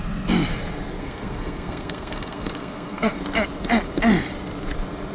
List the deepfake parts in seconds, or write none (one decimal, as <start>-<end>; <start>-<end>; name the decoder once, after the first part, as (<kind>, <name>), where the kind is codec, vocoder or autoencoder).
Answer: 1.0-3.2 (codec, SNAC)